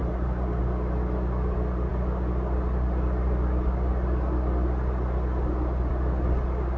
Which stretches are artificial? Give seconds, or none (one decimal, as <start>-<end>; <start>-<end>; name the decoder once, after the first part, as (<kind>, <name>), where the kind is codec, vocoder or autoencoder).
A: 0.0-0.6 (vocoder, BigVGAN v2)